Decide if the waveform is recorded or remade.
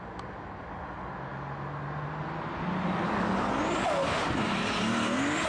recorded